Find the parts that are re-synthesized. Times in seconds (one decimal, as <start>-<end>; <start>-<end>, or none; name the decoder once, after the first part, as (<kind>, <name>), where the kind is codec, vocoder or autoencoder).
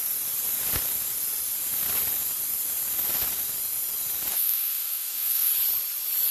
4.3-5.5 (codec, DAC)